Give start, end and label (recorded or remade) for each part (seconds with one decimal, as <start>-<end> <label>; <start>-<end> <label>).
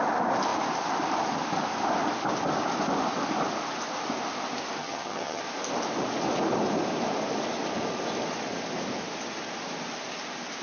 0.0-4.8 recorded; 4.8-5.4 remade; 5.4-10.6 recorded